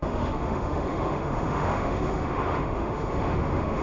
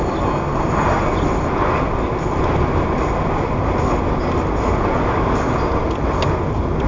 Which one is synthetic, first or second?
first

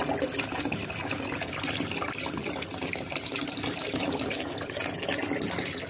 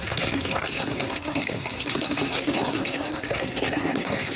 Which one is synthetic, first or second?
second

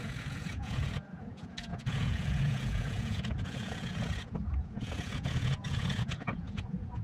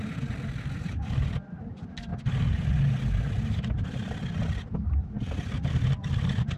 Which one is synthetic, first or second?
first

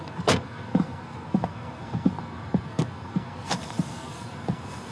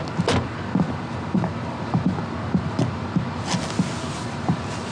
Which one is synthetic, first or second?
first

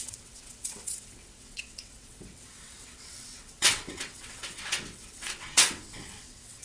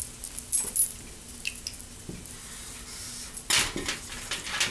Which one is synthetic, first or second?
first